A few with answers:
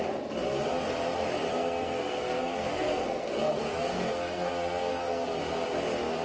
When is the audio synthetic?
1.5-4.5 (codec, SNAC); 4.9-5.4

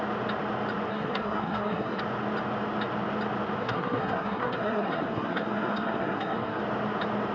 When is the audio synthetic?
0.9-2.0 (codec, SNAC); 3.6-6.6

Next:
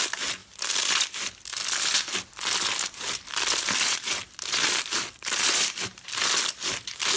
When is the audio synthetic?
none

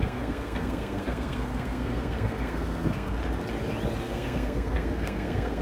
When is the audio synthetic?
0.0-3.2 (codec, SNAC); 4.0-5.6

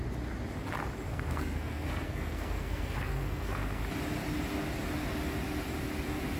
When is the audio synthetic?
1.1-3.8 (codec, SNAC)

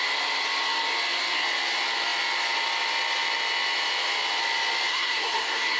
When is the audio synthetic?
4.9-5.8 (codec, SNAC)

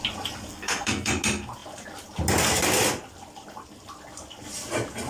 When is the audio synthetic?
0.5-1.1 (codec, SNAC)